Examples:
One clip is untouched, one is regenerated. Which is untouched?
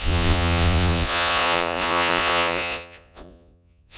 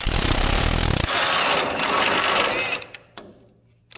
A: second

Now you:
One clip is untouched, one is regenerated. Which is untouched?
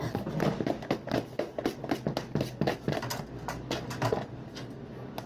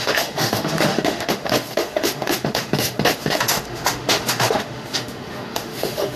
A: first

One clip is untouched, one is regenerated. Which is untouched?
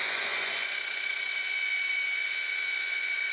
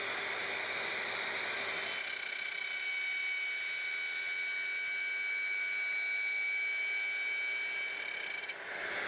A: second